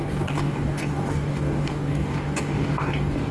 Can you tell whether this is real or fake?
fake